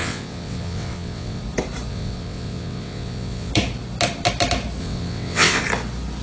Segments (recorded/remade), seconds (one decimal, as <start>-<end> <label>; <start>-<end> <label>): 0.0-1.4 remade; 1.4-1.9 recorded; 1.9-3.5 remade; 3.5-4.8 recorded; 4.8-5.6 remade; 5.6-6.2 recorded